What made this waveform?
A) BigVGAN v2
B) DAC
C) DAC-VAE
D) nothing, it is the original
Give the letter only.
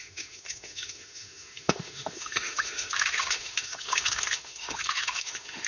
C